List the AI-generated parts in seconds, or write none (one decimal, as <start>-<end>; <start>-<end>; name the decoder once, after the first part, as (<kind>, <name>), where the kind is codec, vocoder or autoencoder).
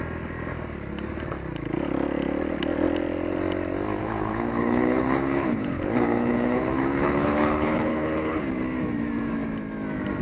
4.0-8.4 (codec, HILCodec)